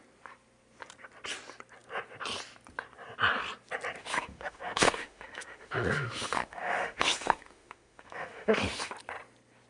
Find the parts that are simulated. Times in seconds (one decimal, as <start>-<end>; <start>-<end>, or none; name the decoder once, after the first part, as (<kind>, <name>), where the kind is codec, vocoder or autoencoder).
4.0-8.9 (autoencoder, DAC-VAE)